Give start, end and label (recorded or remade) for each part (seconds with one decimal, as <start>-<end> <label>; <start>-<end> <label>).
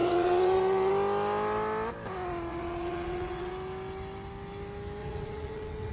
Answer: 0.0-0.9 remade; 0.9-2.5 recorded; 2.5-3.5 remade; 3.5-5.0 recorded; 5.0-5.9 remade